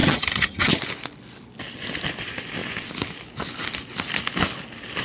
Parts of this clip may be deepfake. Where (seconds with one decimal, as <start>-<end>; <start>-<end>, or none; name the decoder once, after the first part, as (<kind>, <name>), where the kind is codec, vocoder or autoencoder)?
0.0-0.7 (vocoder, HiFi-GAN)